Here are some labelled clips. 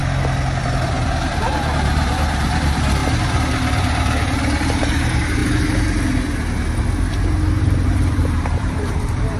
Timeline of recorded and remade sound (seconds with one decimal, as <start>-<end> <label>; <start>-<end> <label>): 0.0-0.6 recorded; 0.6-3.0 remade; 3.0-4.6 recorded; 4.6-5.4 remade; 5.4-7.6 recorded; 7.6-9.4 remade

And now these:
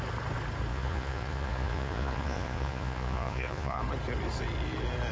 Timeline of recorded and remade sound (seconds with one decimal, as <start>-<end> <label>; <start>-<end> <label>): 0.0-0.7 recorded; 0.7-3.8 remade; 3.8-5.1 recorded

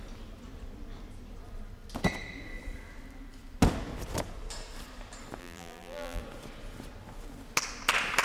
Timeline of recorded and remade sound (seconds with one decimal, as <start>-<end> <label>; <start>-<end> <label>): 0.0-5.4 recorded; 5.4-6.2 remade; 6.2-8.2 recorded

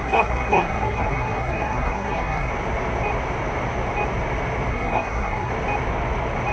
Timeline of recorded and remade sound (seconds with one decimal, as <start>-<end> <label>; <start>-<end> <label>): 0.0-2.5 remade; 2.5-4.7 recorded; 4.7-5.5 remade; 5.5-6.5 recorded

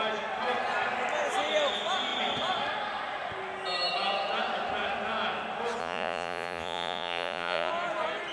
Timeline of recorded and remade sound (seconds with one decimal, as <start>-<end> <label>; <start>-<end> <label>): 0.0-5.8 recorded; 5.8-7.7 remade; 7.7-8.3 recorded

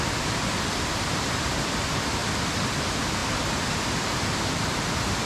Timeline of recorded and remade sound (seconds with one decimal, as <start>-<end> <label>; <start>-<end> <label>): 0.0-5.3 recorded

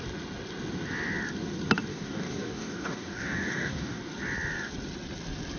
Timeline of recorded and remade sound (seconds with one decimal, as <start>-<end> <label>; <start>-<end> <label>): 0.0-1.9 recorded; 1.9-4.0 remade; 4.0-5.6 recorded